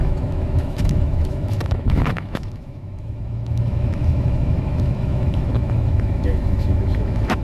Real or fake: fake